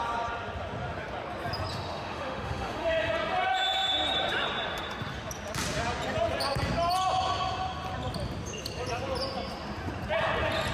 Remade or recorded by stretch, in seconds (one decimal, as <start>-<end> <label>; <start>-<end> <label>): 0.0-1.7 recorded; 1.7-3.1 remade; 3.1-10.7 recorded